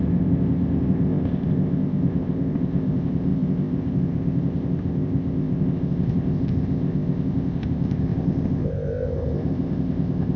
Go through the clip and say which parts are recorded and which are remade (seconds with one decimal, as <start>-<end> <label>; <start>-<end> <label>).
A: 0.0-10.4 remade